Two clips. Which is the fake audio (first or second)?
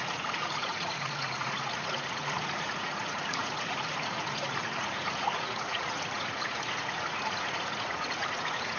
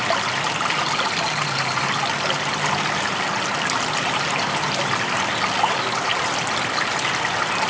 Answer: first